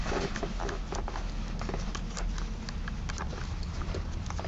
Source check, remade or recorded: recorded